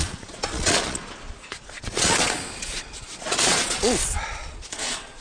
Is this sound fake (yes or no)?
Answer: yes